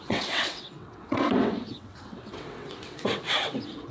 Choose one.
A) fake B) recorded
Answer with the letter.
A